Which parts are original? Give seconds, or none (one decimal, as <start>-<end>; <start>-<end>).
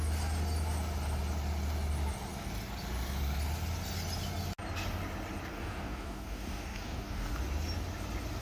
0.0-5.5; 7.3-8.4